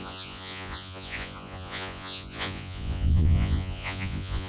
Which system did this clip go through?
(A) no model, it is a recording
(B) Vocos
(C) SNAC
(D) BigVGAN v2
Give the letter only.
B